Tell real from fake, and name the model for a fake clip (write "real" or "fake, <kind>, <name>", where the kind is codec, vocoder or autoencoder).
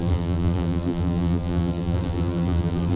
fake, vocoder, BigVGAN v2